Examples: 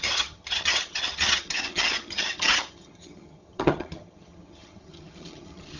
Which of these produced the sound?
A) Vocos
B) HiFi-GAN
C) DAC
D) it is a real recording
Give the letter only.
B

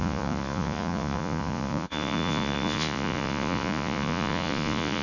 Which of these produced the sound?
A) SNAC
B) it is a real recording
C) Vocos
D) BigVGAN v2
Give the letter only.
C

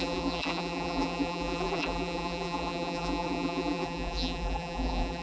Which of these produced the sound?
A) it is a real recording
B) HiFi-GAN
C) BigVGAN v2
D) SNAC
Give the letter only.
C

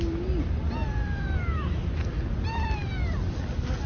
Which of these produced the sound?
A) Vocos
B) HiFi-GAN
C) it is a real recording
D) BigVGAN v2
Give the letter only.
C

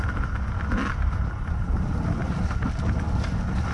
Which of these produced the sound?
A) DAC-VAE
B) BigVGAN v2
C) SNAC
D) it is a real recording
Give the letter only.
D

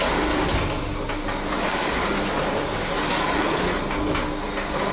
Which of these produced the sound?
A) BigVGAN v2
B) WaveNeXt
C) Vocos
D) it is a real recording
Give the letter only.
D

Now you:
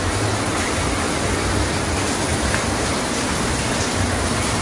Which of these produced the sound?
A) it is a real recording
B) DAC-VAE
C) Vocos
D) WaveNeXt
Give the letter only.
A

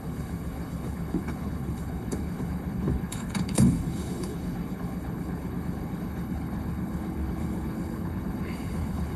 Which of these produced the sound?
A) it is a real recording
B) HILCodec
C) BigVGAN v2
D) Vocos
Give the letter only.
B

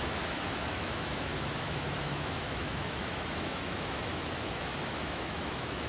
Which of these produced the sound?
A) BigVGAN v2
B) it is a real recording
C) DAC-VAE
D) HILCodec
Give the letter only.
C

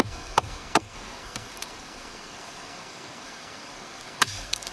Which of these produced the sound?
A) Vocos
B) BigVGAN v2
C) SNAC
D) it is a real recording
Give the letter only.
C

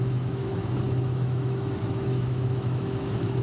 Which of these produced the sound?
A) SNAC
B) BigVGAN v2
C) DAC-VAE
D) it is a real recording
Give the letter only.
C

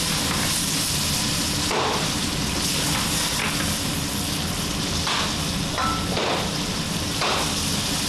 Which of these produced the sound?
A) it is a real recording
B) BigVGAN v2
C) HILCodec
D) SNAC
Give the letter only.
A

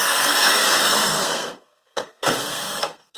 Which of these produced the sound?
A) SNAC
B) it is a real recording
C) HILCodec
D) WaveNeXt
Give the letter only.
A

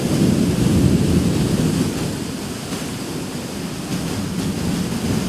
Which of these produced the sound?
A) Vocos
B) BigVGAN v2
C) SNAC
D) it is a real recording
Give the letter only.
D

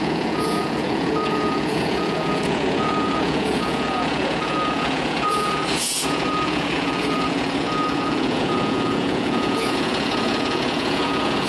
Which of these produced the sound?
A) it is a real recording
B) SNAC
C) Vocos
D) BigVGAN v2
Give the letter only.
C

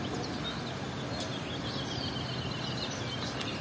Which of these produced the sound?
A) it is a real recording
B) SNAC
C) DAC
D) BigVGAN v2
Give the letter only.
A